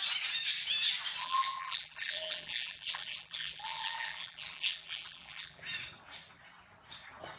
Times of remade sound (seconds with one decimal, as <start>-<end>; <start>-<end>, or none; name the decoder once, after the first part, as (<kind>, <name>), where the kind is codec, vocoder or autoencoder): 1.2-5.6 (vocoder, BigVGAN v2)